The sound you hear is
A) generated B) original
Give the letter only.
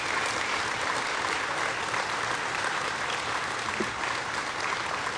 B